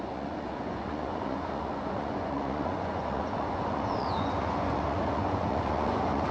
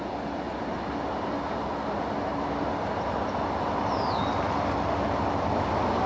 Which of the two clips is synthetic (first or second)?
first